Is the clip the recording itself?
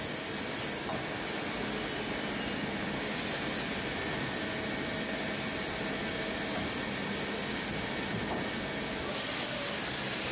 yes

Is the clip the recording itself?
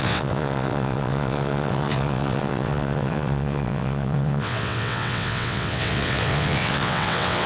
no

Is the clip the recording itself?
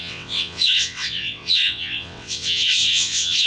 no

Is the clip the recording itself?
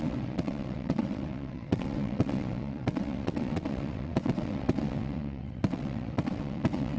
no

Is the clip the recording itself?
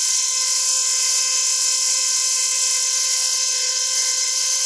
no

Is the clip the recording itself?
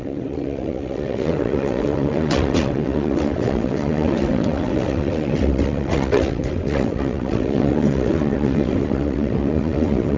no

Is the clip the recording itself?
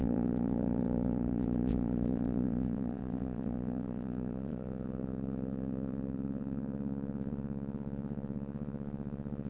no